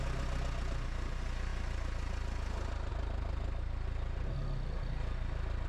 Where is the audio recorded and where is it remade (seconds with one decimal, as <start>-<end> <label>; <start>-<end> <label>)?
0.0-5.7 recorded

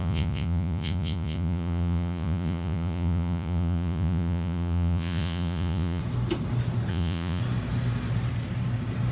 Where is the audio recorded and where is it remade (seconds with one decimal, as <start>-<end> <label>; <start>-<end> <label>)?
0.0-6.0 remade; 6.0-6.9 recorded; 6.9-7.4 remade; 7.4-9.1 recorded

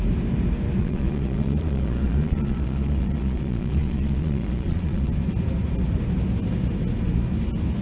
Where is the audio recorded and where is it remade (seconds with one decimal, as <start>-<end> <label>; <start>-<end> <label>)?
0.0-0.8 recorded; 0.8-5.1 remade; 5.1-7.8 recorded

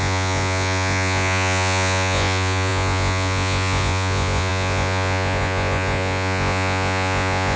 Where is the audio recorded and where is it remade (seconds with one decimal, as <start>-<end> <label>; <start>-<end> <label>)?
0.0-7.6 remade